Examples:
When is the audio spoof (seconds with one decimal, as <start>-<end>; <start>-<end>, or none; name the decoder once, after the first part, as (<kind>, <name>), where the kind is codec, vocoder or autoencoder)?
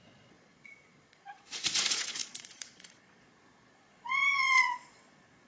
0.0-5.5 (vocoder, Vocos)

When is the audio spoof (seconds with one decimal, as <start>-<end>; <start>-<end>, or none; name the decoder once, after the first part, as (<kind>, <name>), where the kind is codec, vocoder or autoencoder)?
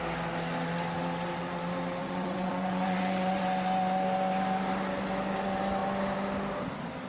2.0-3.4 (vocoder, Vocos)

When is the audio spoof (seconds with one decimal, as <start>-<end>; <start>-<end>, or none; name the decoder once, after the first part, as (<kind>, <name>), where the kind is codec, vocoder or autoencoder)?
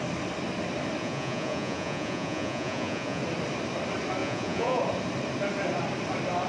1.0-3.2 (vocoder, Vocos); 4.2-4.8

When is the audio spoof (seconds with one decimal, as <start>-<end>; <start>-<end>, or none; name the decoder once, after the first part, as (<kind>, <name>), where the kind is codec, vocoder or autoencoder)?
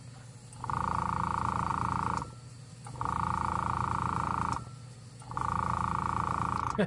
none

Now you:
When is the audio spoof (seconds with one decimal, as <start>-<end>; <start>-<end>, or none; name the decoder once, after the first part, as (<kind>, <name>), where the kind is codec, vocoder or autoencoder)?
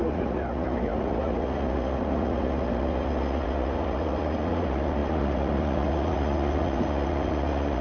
0.0-7.8 (vocoder, Vocos)